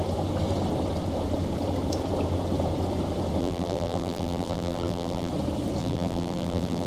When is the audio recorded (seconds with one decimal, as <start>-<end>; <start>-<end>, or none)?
0.0-3.4; 5.3-5.8

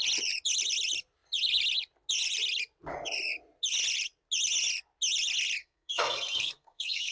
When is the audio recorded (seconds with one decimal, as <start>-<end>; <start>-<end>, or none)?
0.0-5.6

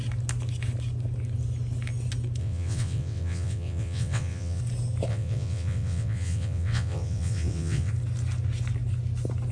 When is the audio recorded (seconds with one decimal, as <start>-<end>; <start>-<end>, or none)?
0.0-2.4; 4.6-5.1; 7.9-9.5

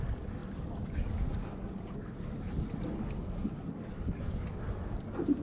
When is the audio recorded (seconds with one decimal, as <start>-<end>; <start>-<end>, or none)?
0.0-5.4

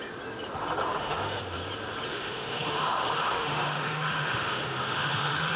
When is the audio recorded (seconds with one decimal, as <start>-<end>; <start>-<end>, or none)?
0.0-0.9; 1.4-2.1